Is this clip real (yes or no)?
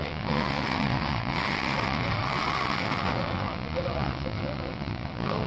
no